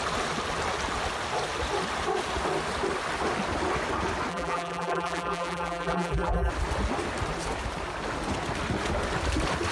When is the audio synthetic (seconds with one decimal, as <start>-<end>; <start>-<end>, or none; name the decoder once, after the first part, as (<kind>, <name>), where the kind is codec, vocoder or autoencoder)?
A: 4.3-6.5 (vocoder, BigVGAN v2)